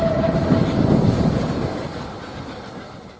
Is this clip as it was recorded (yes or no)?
yes